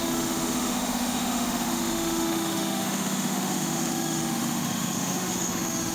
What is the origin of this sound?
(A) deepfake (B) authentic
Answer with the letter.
A